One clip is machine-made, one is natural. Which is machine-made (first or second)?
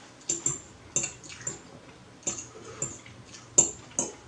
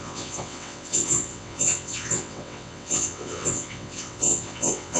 second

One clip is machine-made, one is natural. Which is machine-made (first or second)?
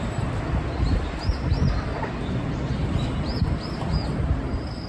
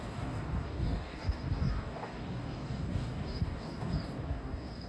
second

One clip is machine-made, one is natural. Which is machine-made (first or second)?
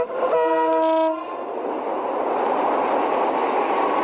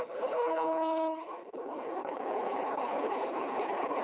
second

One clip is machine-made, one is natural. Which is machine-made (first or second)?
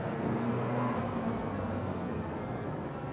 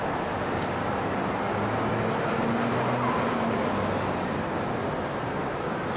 first